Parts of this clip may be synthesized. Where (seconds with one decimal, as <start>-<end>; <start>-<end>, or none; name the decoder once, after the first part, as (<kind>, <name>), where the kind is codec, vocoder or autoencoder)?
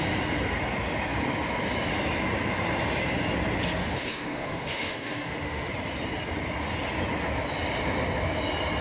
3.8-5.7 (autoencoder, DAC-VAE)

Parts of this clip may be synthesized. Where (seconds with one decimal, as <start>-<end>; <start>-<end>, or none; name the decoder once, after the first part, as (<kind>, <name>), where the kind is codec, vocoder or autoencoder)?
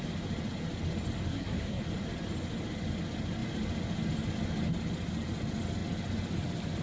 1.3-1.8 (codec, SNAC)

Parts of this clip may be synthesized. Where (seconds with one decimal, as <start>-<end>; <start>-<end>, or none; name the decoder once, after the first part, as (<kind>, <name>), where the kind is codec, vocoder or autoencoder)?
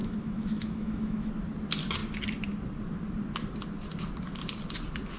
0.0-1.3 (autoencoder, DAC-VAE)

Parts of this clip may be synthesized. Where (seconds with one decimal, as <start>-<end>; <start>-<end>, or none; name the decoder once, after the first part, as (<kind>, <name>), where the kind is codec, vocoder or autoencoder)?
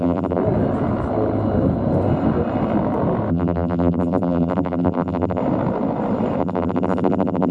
0.0-0.4 (vocoder, BigVGAN v2); 3.3-5.4; 6.4-7.5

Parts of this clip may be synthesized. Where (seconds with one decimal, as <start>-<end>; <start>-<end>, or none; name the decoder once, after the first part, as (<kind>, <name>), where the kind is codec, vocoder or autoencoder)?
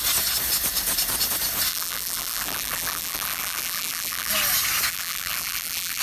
1.7-4.3 (vocoder, BigVGAN v2); 4.9-6.0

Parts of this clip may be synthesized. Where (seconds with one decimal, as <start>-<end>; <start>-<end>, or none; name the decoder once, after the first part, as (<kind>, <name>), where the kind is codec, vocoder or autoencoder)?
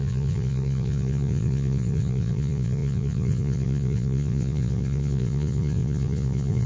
0.0-6.7 (vocoder, Vocos)